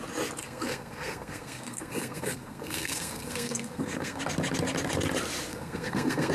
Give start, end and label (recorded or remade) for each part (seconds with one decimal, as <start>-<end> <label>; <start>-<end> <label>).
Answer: 0.0-0.4 recorded; 0.4-4.2 remade; 4.2-5.5 recorded; 5.5-6.3 remade

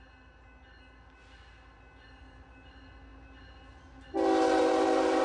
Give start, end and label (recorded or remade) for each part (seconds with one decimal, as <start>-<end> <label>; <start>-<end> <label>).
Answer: 0.0-5.2 recorded

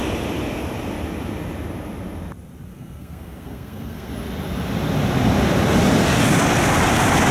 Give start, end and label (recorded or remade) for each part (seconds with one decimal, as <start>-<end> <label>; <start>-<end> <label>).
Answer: 0.0-2.7 recorded; 2.7-4.1 remade; 4.1-7.3 recorded

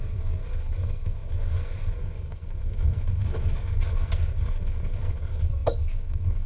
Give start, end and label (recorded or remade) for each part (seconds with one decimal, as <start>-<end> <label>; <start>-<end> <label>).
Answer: 0.0-6.5 remade

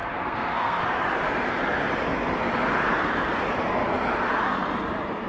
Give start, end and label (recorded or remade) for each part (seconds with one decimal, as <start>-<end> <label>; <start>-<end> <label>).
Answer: 0.0-0.8 remade; 0.8-5.3 recorded

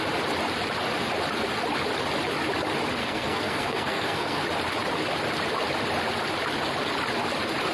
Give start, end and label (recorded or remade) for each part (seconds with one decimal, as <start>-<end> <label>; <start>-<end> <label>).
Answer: 0.0-3.0 recorded; 3.0-4.4 remade; 4.4-7.7 recorded

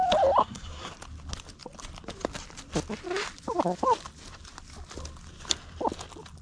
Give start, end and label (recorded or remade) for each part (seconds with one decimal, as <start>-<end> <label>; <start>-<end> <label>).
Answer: 0.0-0.4 recorded; 0.4-0.9 remade; 0.9-6.4 recorded

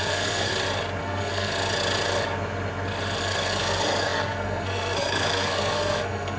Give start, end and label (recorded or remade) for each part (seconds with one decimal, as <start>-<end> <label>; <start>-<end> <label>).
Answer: 0.0-0.5 remade; 0.5-1.0 recorded; 1.0-1.5 remade; 1.5-3.2 recorded; 3.2-6.4 remade